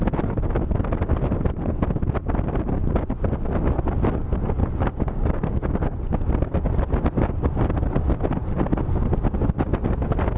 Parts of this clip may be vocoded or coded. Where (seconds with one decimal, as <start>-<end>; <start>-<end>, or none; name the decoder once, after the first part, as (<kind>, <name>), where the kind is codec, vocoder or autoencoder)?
4.6-6.0 (codec, DAC)